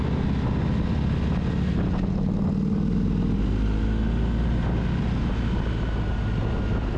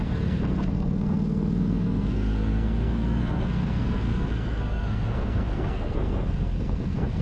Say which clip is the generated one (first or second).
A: second